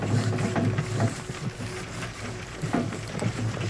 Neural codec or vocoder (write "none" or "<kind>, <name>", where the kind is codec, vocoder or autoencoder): none